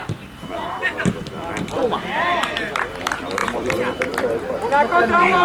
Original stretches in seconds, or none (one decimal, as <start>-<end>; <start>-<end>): 1.8-2.9